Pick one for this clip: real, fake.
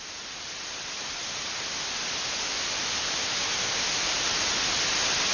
real